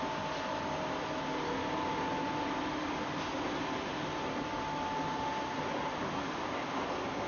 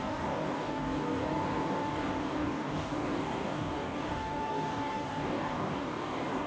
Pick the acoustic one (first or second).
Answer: first